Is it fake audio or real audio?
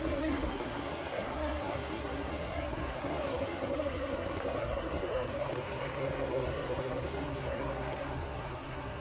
fake